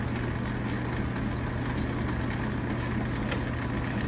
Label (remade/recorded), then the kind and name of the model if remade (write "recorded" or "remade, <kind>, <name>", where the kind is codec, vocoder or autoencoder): recorded